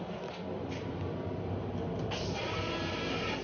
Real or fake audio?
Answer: real